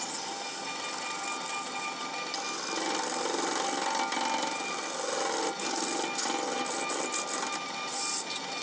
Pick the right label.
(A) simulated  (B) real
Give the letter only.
B